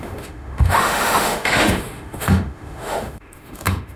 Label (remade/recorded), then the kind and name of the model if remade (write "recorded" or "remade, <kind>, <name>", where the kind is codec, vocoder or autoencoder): remade, autoencoder, DAC-VAE